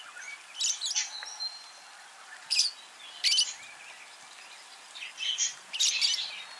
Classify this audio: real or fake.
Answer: real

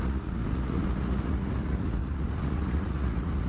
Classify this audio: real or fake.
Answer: fake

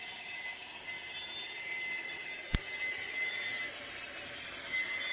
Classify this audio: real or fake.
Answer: real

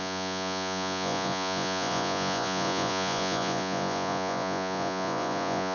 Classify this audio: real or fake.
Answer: fake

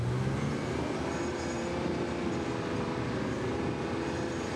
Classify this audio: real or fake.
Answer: real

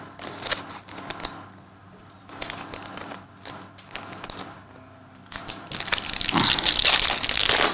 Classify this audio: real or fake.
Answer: real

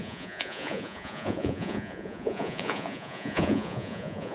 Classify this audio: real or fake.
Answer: fake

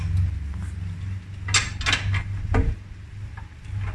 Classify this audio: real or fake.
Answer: real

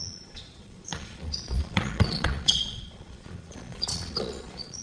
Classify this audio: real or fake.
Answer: fake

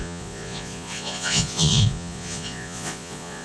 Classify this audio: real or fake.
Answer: fake